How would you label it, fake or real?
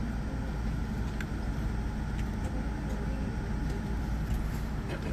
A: real